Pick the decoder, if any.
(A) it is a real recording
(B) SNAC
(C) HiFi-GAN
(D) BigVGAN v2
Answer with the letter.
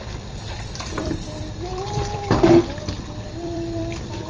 D